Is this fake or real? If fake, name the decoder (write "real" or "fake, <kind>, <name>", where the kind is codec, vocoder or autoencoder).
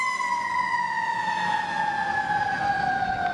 real